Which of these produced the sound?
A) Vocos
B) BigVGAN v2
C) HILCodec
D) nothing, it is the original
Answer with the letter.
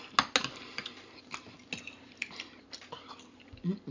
D